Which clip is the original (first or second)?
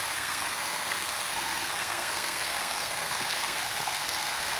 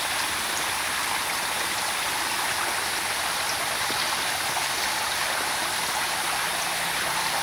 second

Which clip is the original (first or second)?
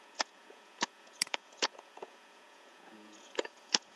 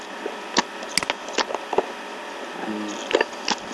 second